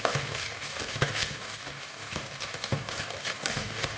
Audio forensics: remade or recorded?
remade